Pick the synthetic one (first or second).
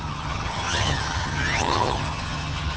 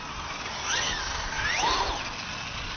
first